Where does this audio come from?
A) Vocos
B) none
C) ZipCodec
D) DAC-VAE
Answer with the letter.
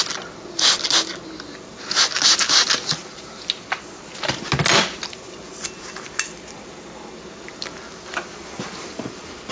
B